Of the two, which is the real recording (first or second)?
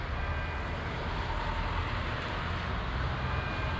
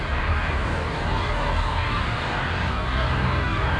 first